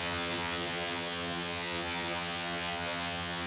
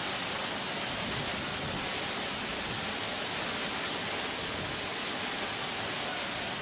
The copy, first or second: first